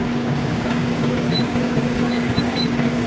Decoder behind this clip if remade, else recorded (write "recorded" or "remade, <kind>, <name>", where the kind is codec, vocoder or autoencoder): remade, codec, DAC